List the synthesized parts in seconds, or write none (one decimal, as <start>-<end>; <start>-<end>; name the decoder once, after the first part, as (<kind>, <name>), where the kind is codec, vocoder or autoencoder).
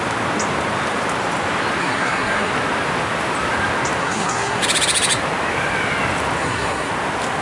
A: 1.8-2.5 (codec, SNAC); 4.0-4.6; 6.4-6.9